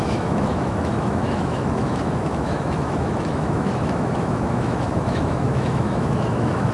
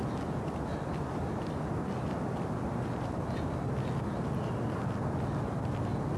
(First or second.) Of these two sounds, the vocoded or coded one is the first